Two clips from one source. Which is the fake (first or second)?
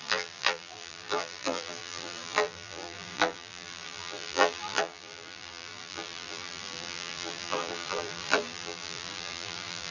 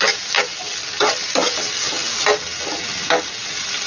first